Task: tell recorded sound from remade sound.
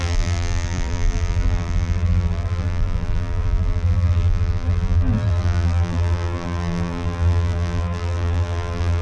remade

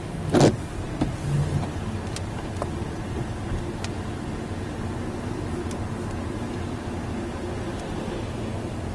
recorded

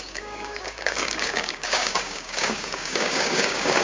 remade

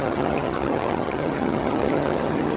remade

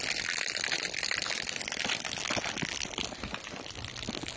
recorded